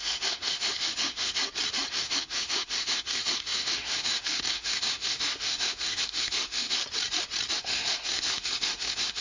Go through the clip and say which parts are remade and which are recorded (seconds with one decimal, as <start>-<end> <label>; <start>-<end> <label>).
0.0-1.4 remade; 1.4-1.9 recorded; 1.9-6.8 remade; 6.8-7.5 recorded; 7.5-9.2 remade